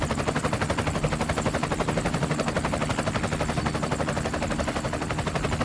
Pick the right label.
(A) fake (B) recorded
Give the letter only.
B